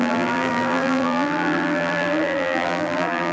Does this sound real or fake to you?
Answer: fake